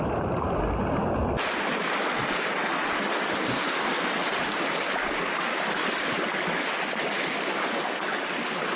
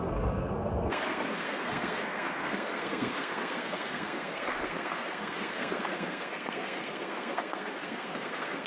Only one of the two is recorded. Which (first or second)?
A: first